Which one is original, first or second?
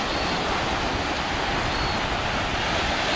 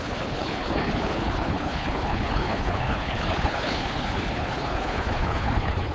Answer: first